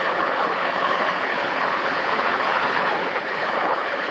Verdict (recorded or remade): remade